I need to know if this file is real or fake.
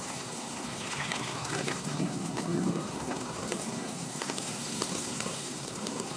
fake